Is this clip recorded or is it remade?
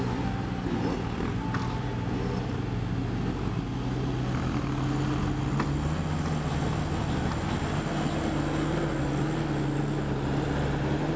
recorded